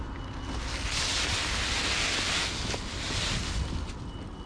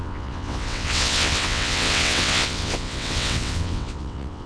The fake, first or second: second